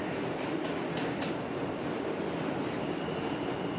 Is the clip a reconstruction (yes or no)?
no